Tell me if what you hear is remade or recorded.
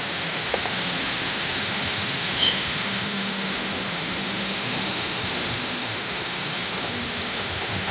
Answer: remade